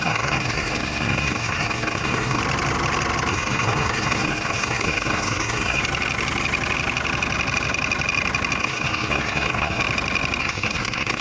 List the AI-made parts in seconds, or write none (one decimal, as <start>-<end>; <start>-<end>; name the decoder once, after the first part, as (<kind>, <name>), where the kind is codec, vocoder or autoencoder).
0.0-2.4 (codec, SNAC); 3.3-5.8; 8.6-9.8; 10.4-11.2